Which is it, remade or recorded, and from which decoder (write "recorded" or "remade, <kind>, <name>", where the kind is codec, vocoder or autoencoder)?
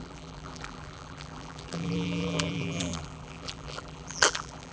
remade, vocoder, BigVGAN v2